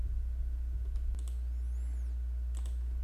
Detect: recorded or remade recorded